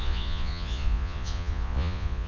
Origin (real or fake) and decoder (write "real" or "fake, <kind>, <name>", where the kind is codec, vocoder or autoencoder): fake, vocoder, Vocos